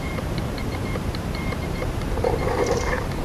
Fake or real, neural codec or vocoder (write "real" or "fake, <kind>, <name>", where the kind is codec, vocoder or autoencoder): fake, vocoder, BigVGAN v2